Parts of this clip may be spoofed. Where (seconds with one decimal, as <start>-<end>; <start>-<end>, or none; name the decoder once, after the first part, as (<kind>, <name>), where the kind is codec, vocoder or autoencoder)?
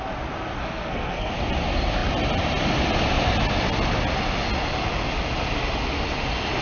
0.6-1.3 (codec, SNAC)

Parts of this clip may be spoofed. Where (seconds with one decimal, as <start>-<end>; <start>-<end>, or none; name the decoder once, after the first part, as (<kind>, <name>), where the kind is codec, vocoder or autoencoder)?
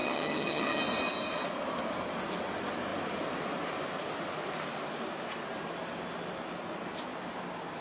0.0-0.8 (vocoder, HiFi-GAN)